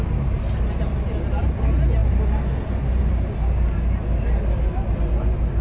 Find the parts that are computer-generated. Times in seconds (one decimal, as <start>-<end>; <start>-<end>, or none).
none